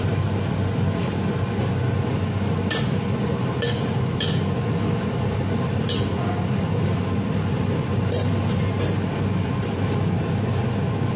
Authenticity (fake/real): real